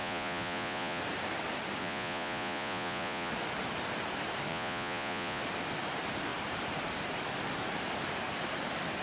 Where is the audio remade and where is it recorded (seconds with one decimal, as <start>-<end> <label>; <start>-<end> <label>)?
0.0-1.0 remade; 1.0-1.8 recorded; 1.8-3.3 remade; 3.3-4.5 recorded; 4.5-5.4 remade; 5.4-9.0 recorded